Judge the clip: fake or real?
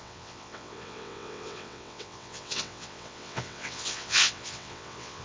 fake